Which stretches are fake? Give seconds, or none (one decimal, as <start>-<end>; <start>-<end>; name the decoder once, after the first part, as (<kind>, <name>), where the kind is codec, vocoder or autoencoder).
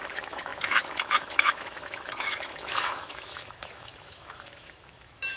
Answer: 0.0-5.4 (autoencoder, DAC-VAE)